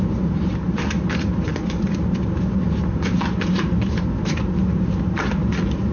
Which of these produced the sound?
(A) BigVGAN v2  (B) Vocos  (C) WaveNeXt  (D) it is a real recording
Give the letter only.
A